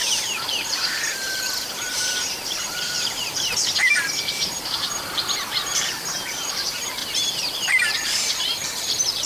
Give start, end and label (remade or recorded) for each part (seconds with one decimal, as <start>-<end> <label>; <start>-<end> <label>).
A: 0.0-7.0 remade; 7.0-7.8 recorded; 7.8-9.3 remade